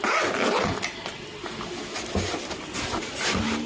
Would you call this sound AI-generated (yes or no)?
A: no